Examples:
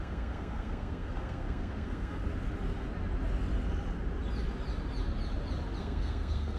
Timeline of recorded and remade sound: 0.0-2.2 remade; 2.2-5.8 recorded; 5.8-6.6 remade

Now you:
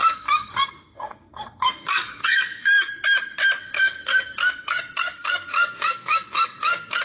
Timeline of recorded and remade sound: 0.0-2.9 remade; 2.9-3.6 recorded; 3.6-7.0 remade

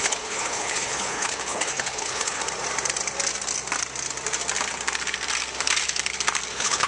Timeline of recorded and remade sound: 0.0-2.4 remade; 2.4-6.5 recorded; 6.5-6.9 remade